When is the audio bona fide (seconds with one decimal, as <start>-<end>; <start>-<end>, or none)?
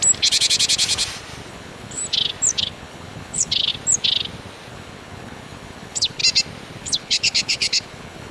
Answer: 0.0-1.5; 2.0-2.6; 3.7-4.7; 6.2-6.8